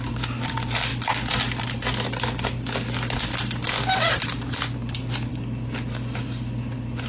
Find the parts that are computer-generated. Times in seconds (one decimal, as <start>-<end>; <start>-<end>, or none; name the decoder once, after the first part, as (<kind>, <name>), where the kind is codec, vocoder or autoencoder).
none